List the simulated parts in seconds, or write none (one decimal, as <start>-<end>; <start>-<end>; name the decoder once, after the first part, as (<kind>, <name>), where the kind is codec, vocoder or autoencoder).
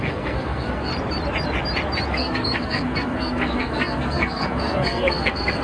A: 0.0-0.9 (codec, SNAC); 2.1-5.6